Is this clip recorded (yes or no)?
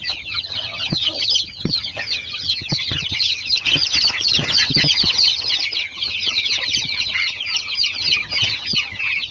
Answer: no